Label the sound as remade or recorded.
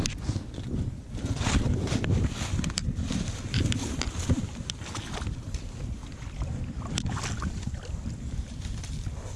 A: recorded